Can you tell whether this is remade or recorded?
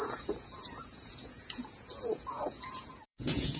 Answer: remade